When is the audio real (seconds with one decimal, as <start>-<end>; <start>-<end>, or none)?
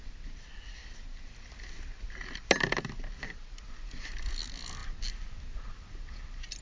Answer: 0.0-6.6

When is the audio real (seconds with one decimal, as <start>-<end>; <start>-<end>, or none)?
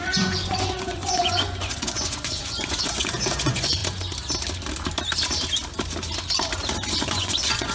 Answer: 3.8-7.0